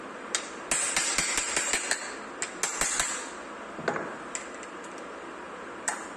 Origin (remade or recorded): recorded